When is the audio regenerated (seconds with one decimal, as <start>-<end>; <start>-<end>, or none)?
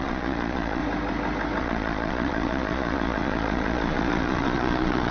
0.0-0.8; 1.6-5.1